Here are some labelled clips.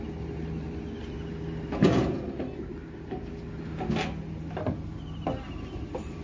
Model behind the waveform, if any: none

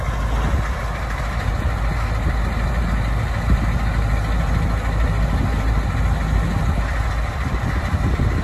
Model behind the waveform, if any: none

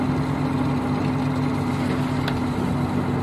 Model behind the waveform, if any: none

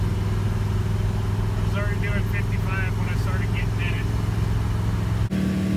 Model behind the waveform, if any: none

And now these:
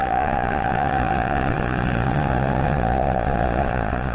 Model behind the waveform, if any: vocoder, Vocos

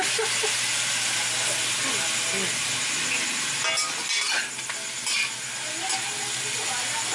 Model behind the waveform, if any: none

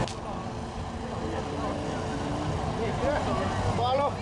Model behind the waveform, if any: none